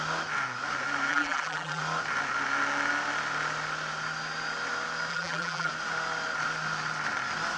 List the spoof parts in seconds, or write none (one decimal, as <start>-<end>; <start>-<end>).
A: 1.1-1.8; 5.1-5.7